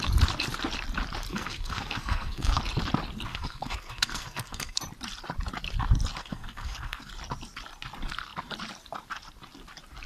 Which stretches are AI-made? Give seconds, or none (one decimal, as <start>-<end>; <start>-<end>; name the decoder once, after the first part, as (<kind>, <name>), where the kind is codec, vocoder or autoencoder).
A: 1.3-2.6 (codec, SNAC); 3.3-4.8; 6.2-7.1